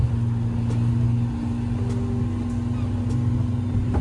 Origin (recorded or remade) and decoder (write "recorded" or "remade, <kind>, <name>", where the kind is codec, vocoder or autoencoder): recorded